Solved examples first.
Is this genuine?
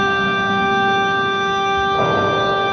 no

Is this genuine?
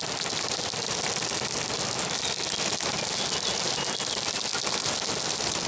yes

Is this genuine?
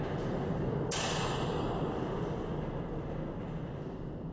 yes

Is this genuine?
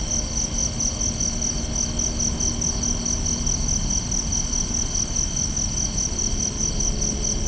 yes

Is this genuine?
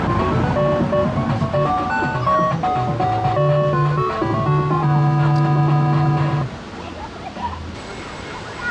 yes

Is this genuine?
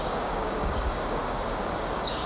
no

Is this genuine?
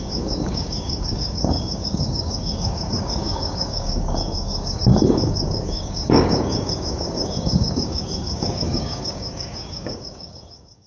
no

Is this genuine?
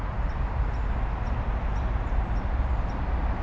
yes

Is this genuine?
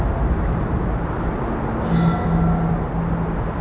yes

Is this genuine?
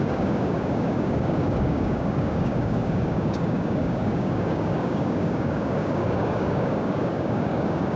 no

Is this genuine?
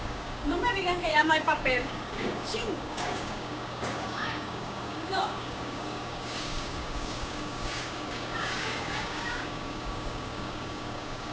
no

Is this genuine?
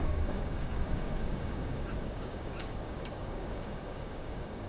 no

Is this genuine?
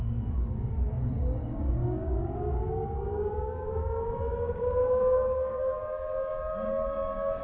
no